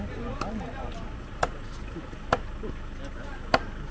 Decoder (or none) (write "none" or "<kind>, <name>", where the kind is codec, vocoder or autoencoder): none